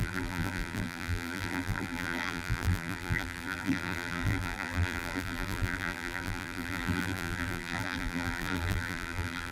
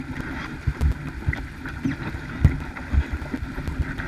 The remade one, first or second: first